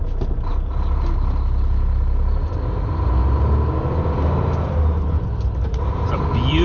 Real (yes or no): yes